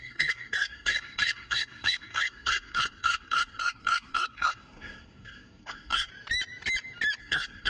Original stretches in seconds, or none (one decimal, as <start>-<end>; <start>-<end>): 6.1-7.2